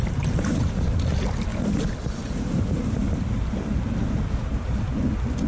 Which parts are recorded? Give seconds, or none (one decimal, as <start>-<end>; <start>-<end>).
0.0-5.5